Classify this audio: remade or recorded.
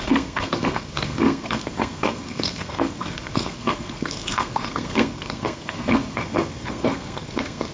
remade